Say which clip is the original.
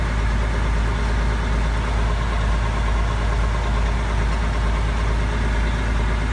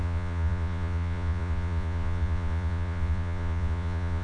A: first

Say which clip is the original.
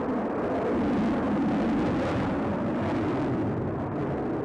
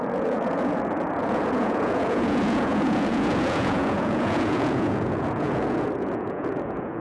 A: first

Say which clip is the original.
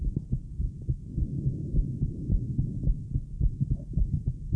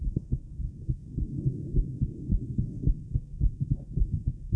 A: first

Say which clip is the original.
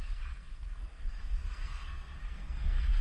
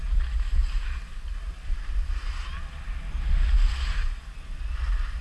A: second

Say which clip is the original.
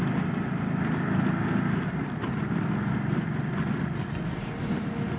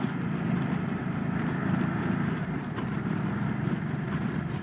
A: first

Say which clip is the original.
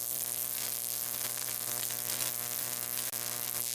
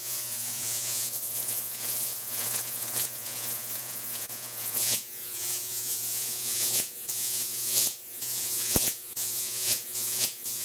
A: first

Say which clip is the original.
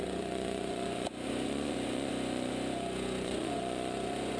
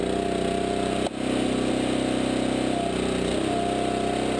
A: second